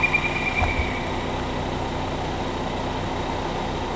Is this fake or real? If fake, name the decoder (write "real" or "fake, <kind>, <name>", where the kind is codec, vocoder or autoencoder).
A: real